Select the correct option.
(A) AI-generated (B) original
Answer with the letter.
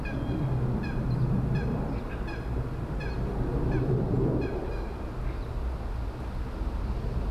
B